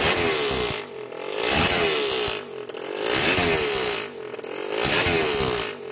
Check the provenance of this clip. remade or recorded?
recorded